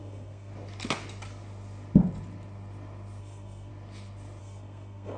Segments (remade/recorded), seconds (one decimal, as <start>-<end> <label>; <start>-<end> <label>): 0.0-0.5 remade; 0.5-3.2 recorded; 3.2-3.7 remade; 3.7-4.4 recorded; 4.4-5.2 remade

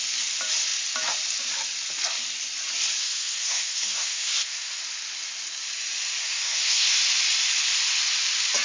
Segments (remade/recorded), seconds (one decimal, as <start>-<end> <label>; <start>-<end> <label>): 0.0-3.0 recorded; 3.0-4.8 remade; 4.8-6.2 recorded; 6.2-7.0 remade; 7.0-8.6 recorded

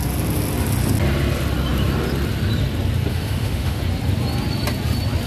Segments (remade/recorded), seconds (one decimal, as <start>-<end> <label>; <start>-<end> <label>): 0.0-3.1 recorded; 3.1-3.8 remade; 3.8-5.3 recorded

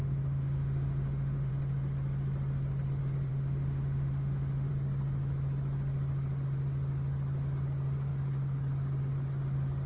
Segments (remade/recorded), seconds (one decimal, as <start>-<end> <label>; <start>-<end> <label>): 0.0-1.5 remade; 1.5-3.3 recorded; 3.3-4.7 remade; 4.7-9.9 recorded

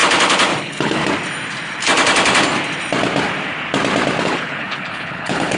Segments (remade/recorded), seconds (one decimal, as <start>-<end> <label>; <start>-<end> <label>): 0.0-0.6 recorded; 0.6-1.0 remade; 1.0-4.2 recorded; 4.2-5.6 remade